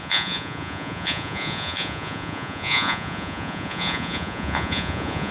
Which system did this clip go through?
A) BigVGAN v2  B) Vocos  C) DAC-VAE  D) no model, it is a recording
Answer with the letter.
B